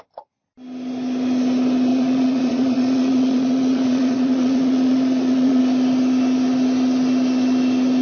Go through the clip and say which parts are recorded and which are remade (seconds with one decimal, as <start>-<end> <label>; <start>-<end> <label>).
0.0-1.9 recorded; 1.9-5.6 remade; 5.6-8.0 recorded